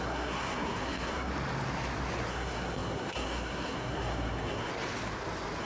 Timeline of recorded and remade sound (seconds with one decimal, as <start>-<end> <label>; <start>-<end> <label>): 0.0-1.3 remade; 1.3-2.3 recorded; 2.3-4.7 remade; 4.7-5.6 recorded